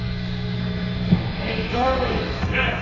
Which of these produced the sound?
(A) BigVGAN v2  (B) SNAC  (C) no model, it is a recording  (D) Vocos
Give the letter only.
B